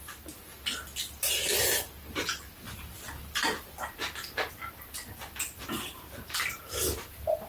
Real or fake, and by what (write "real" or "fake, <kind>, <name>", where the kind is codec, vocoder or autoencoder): real